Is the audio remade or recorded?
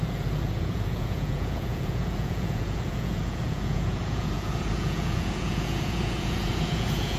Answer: remade